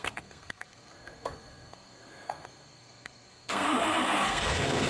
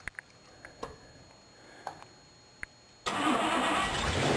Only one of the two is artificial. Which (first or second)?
first